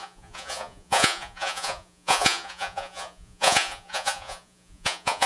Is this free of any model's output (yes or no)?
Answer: no